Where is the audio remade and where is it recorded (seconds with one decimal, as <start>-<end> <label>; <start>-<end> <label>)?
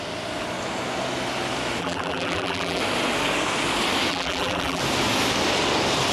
0.0-1.8 recorded; 1.8-2.8 remade; 2.8-4.1 recorded; 4.1-4.8 remade; 4.8-6.1 recorded